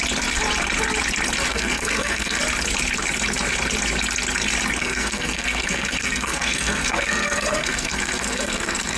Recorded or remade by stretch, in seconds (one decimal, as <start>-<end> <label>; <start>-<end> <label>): 0.0-1.5 recorded; 1.5-2.4 remade; 2.4-4.8 recorded; 4.8-9.0 remade